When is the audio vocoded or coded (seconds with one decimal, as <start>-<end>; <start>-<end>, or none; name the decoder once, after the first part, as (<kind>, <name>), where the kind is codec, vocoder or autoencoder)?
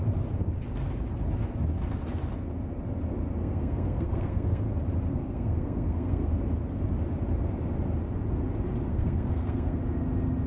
3.4-4.6 (codec, SNAC); 5.1-6.3; 8.9-9.8